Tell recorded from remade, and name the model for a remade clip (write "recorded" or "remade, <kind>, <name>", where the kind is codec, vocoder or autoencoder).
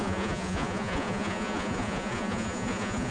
remade, vocoder, Vocos